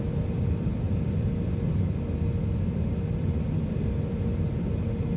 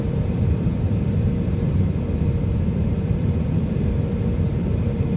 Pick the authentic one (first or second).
first